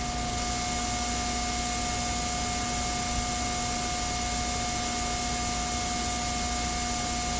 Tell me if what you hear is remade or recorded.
recorded